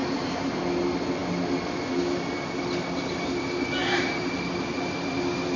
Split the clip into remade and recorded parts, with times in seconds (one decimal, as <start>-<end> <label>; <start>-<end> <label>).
0.0-0.6 remade; 0.6-3.8 recorded; 3.8-4.3 remade; 4.3-5.6 recorded